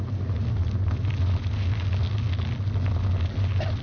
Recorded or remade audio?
recorded